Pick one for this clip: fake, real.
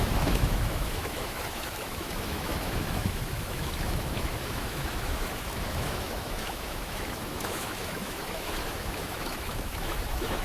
fake